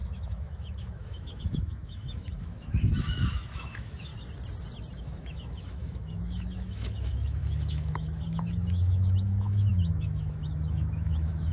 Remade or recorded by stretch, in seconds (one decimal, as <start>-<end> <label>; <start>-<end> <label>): 0.0-4.1 remade; 4.1-4.9 recorded; 4.9-11.5 remade